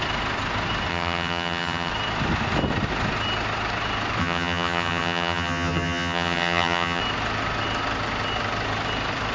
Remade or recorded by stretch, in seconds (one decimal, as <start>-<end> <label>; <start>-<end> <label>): 0.0-0.9 recorded; 0.9-1.9 remade; 1.9-4.2 recorded; 4.2-7.0 remade; 7.0-9.3 recorded